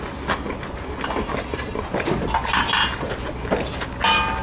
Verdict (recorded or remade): recorded